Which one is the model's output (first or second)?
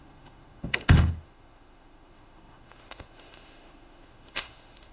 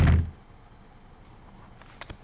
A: first